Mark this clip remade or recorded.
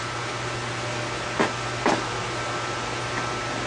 recorded